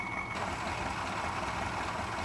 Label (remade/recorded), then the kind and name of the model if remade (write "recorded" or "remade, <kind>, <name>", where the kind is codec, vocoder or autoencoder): recorded